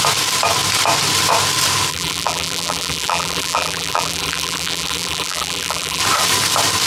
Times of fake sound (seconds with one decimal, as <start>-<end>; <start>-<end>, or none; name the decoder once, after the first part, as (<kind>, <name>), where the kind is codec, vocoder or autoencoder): 1.9-6.0 (vocoder, BigVGAN v2)